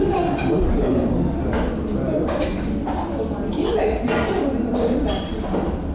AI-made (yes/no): yes